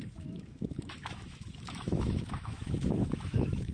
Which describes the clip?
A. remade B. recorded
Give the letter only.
A